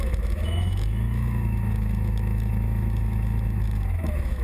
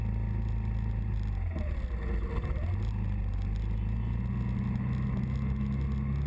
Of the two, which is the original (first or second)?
second